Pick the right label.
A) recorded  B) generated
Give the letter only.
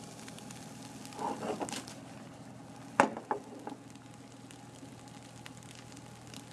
A